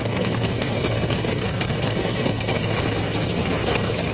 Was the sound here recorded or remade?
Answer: remade